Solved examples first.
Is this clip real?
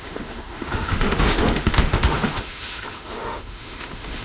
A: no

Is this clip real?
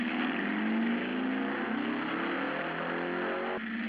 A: yes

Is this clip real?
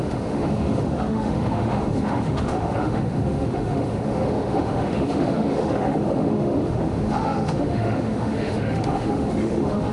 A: no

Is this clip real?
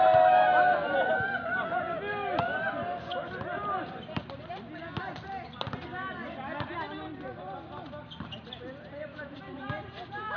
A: yes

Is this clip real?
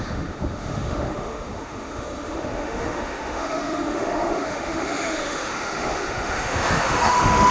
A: no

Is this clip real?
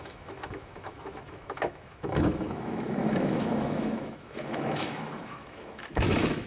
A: no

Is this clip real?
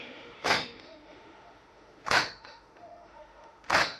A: no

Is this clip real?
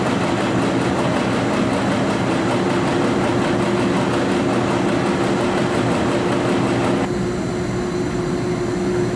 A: yes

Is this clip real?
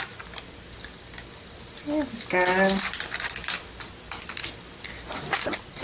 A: yes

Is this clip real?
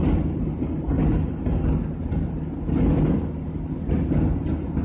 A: yes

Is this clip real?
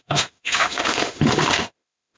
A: no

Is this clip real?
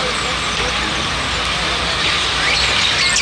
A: yes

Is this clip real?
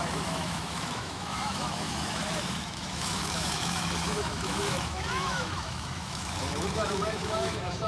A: no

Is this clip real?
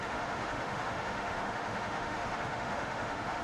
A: no